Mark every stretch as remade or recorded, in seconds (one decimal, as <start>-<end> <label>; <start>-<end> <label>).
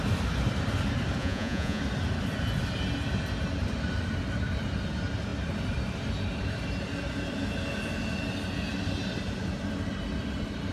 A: 0.0-1.2 recorded; 1.2-1.8 remade; 1.8-10.7 recorded